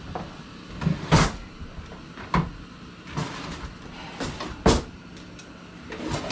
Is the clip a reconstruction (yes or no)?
no